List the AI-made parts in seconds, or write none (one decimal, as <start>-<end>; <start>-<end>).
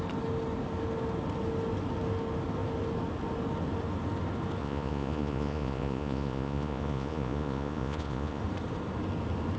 4.6-8.4